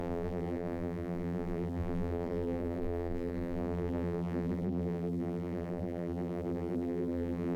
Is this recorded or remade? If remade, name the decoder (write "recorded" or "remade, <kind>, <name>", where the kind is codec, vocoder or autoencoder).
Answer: remade, vocoder, BigVGAN v2